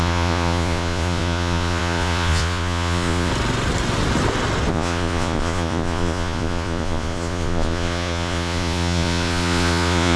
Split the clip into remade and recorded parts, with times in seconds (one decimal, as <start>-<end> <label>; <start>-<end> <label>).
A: 0.0-3.3 remade; 3.3-4.7 recorded; 4.7-10.2 remade